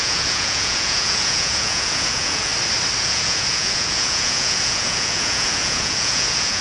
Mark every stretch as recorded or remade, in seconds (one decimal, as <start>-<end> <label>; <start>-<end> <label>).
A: 0.0-2.5 remade; 2.5-3.0 recorded; 3.0-6.6 remade

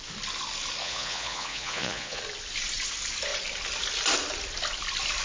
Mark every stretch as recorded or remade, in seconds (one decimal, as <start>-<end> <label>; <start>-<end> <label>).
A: 0.0-0.8 recorded; 0.8-2.2 remade; 2.2-5.2 recorded

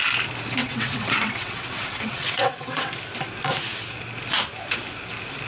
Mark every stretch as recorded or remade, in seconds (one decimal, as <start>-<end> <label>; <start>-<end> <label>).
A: 0.0-0.6 recorded; 0.6-2.9 remade; 2.9-5.5 recorded

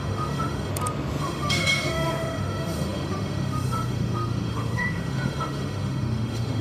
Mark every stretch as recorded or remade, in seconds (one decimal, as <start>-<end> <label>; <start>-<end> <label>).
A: 0.0-0.7 remade; 0.7-1.2 recorded; 1.2-6.6 remade